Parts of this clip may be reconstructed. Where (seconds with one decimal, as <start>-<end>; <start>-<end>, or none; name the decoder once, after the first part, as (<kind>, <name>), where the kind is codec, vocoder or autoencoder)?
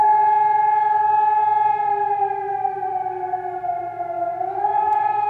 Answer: 0.0-1.4 (autoencoder, DAC-VAE); 4.6-5.3